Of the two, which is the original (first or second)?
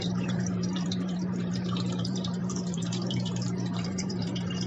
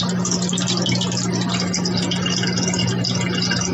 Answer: second